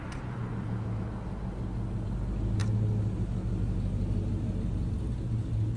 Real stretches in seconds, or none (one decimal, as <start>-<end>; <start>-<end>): 0.0-5.8